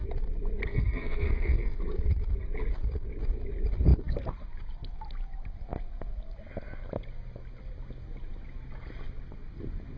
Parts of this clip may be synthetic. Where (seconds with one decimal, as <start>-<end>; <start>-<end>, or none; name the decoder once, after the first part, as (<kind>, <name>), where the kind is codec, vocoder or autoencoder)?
0.7-1.8 (codec, SNAC)